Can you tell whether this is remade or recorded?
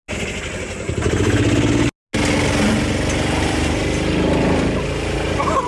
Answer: recorded